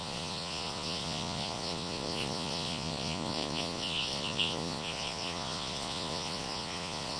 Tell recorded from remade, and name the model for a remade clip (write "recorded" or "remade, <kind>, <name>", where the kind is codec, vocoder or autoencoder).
remade, vocoder, Vocos